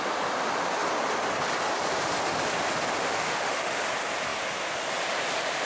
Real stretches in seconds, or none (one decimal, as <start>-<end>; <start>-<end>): 0.0-3.0; 3.8-5.7